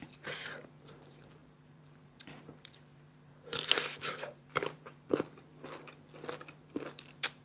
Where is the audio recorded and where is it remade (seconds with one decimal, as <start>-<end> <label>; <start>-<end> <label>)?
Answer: 0.0-5.5 remade; 5.5-6.6 recorded; 6.6-7.4 remade